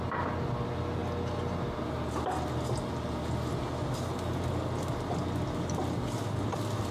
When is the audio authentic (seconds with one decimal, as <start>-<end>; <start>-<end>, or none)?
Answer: 0.0-6.9